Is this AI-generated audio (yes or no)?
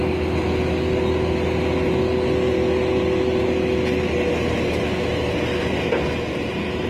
no